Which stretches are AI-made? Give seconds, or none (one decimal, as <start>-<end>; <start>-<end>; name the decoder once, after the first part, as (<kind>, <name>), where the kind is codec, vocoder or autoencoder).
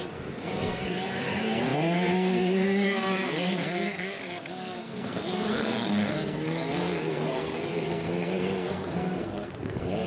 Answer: 0.0-10.1 (codec, SNAC)